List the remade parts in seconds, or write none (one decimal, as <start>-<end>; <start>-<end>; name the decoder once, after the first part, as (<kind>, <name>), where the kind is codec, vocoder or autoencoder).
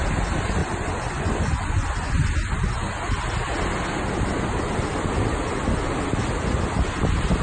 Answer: 0.6-2.1 (vocoder, Vocos)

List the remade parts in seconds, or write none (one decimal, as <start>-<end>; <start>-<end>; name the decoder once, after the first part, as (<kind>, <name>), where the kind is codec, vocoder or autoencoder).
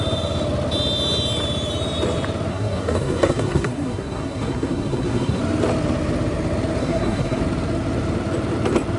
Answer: 2.5-5.4 (codec, SNAC); 6.8-7.4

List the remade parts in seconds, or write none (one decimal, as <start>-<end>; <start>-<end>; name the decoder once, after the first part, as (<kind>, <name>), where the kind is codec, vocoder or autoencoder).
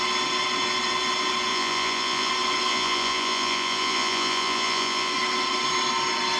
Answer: 1.5-2.3 (vocoder, Vocos); 2.7-5.1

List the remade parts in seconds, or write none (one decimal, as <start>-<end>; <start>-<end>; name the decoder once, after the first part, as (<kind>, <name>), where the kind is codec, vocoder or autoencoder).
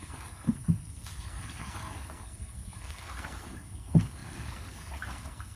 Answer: 0.0-5.6 (codec, SNAC)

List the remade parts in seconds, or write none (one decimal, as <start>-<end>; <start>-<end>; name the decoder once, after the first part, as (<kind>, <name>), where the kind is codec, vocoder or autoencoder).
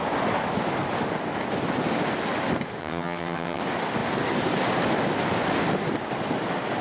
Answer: 2.8-3.6 (vocoder, HiFi-GAN)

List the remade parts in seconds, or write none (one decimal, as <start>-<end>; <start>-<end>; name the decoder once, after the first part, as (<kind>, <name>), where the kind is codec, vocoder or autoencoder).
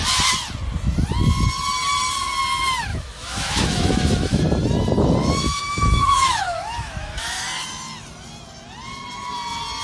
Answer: 2.9-4.4 (autoencoder, DAC-VAE); 5.2-7.4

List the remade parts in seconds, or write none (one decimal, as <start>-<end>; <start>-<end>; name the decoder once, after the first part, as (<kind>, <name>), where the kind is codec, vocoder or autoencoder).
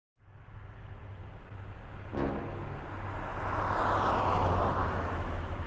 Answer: 4.8-5.7 (autoencoder, DAC-VAE)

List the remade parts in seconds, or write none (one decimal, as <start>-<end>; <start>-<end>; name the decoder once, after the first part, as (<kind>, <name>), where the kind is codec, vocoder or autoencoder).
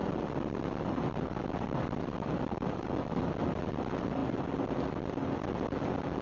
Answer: none